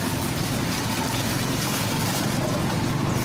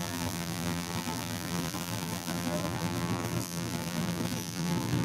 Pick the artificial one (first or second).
second